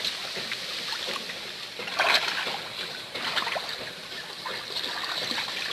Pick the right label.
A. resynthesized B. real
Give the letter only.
B